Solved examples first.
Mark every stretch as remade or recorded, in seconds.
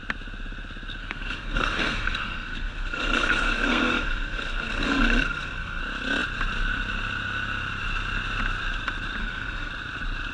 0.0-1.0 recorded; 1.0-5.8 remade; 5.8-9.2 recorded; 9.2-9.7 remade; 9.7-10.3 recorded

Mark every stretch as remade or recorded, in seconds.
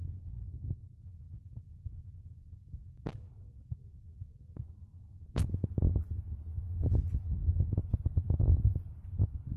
0.0-7.8 recorded; 7.8-9.2 remade; 9.2-9.6 recorded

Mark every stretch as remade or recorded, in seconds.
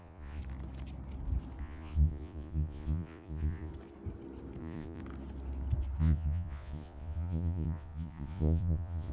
0.0-0.4 remade; 0.4-1.6 recorded; 1.6-3.7 remade; 3.7-4.6 recorded; 4.6-5.0 remade; 5.0-6.0 recorded; 6.0-9.1 remade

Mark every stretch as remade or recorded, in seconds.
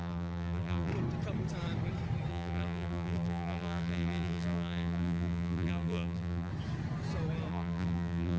0.0-0.9 remade; 0.9-2.3 recorded; 2.3-6.5 remade; 6.5-7.5 recorded; 7.5-8.4 remade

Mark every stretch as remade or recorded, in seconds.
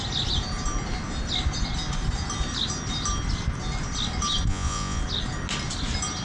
0.0-4.5 recorded; 4.5-5.0 remade; 5.0-6.2 recorded